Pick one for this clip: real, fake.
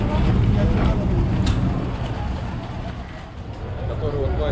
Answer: real